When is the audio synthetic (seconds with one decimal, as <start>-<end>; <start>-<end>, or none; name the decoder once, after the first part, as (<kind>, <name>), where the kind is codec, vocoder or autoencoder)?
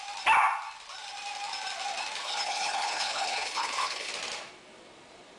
2.2-4.1 (codec, HILCodec)